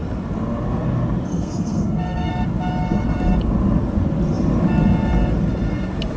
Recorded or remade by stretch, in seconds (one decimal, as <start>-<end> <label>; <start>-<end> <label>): 0.0-1.3 recorded; 1.3-2.3 remade; 2.3-6.2 recorded